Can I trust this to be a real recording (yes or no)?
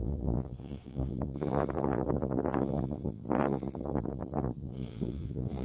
no